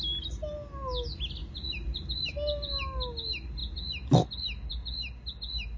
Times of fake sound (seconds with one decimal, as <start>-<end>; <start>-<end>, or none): 1.4-2.3